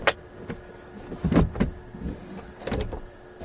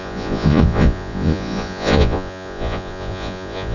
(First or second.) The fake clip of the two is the second